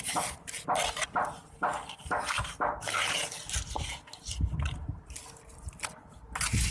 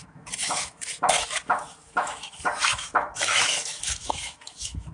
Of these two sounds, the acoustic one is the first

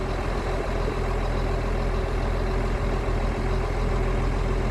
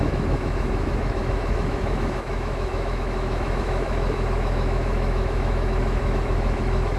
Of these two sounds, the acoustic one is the first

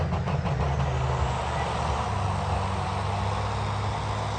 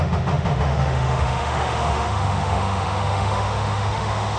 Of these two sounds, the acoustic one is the first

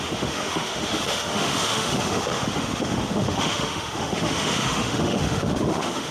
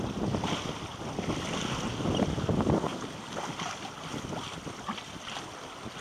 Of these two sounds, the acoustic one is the second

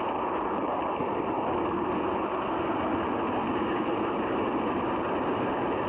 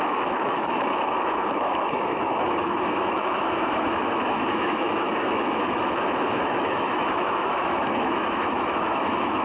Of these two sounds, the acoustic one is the first